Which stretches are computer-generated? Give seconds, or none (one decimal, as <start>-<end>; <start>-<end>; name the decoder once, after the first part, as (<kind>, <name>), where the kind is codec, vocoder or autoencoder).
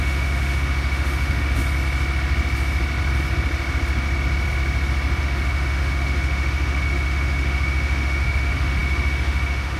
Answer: 0.0-1.6 (autoencoder, DAC-VAE); 5.2-9.8